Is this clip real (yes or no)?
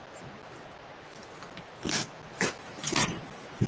yes